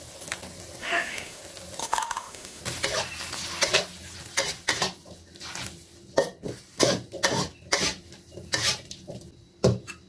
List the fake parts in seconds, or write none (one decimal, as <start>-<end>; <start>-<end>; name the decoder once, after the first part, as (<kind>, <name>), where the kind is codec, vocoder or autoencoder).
0.8-1.4 (autoencoder, DAC-VAE); 1.8-2.6